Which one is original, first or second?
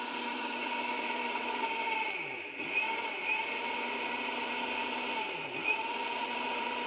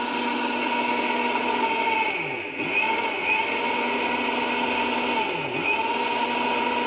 second